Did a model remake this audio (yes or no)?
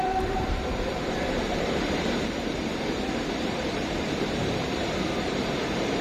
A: yes